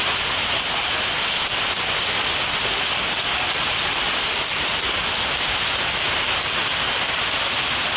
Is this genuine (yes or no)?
yes